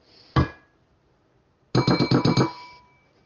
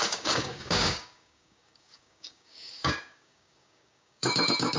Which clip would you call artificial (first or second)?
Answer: second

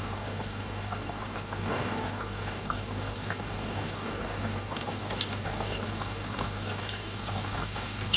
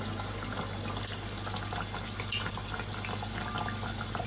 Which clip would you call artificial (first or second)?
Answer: first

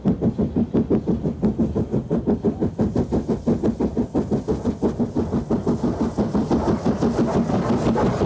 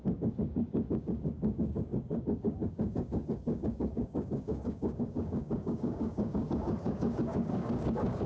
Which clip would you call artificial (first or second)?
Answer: second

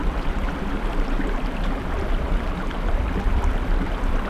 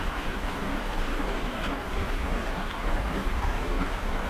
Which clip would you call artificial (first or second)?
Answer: second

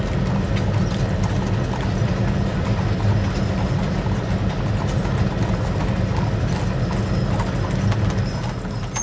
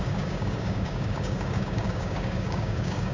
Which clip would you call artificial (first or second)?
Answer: second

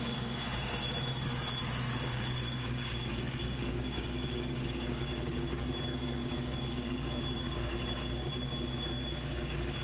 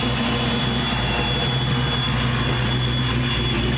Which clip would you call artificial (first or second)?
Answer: first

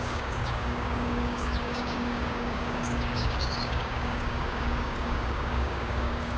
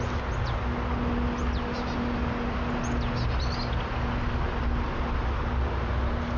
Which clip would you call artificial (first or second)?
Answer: first